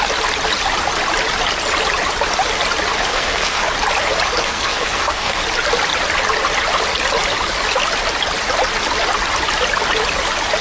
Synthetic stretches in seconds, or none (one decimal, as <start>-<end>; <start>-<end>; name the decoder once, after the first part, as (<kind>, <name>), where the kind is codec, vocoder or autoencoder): 3.1-3.7 (codec, SNAC); 4.4-5.4